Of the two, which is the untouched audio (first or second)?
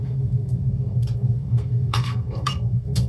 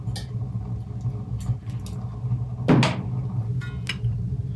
second